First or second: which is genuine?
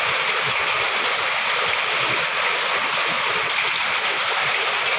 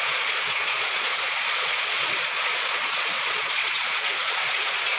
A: first